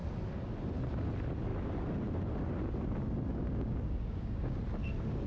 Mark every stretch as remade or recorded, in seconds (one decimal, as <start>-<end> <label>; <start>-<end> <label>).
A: 0.0-3.3 recorded; 3.3-4.6 remade; 4.6-5.3 recorded